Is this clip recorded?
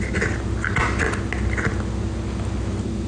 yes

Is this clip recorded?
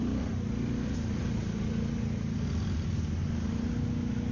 yes